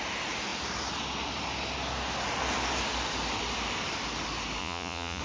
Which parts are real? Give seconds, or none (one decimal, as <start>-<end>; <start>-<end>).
0.0-4.6